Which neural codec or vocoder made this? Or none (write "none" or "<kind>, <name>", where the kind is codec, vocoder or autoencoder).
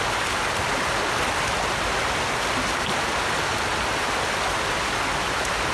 none